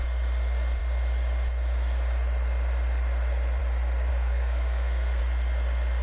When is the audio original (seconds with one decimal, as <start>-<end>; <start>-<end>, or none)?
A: 0.0-4.1; 5.2-6.0